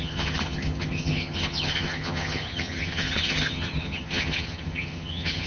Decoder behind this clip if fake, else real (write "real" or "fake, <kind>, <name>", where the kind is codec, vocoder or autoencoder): fake, vocoder, HiFi-GAN